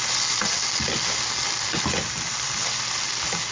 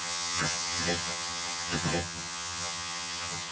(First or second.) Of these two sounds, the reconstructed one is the second